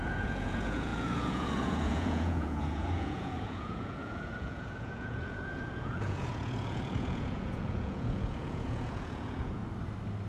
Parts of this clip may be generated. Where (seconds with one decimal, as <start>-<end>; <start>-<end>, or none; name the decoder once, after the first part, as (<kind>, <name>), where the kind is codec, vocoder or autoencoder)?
0.0-9.6 (vocoder, Vocos)